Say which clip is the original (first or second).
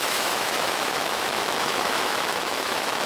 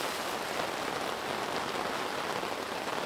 second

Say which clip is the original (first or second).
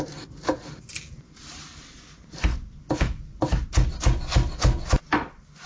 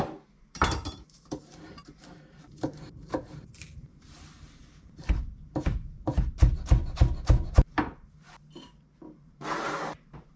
first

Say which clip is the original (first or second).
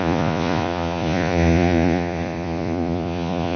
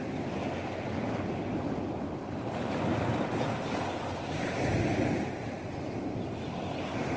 second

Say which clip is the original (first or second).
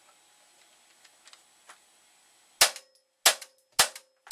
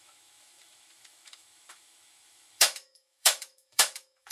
first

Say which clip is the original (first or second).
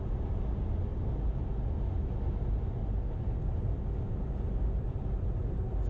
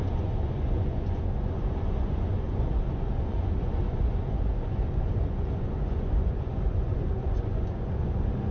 first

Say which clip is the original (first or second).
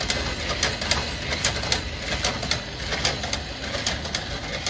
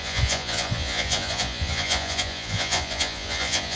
first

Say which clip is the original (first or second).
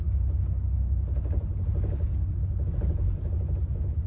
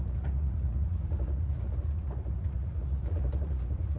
first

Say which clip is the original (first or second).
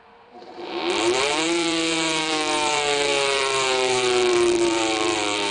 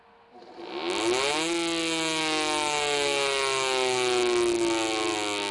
second